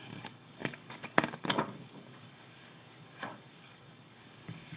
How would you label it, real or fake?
fake